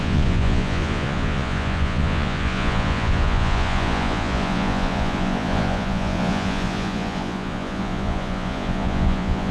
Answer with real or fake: fake